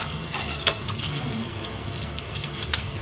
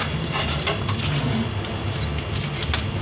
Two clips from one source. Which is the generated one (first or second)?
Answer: first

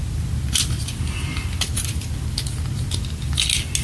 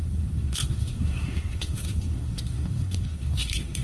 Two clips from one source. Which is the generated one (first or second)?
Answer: second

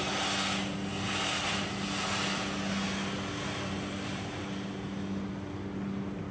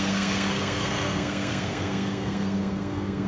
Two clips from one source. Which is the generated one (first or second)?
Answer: second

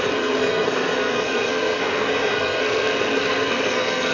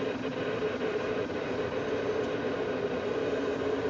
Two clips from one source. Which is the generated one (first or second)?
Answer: first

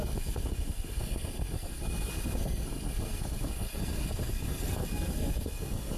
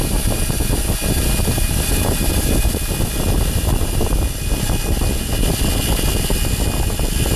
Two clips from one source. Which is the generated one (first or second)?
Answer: first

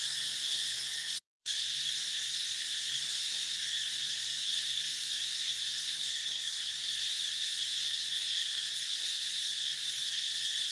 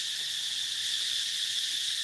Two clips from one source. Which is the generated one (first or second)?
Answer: first